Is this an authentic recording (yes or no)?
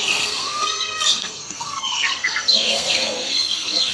no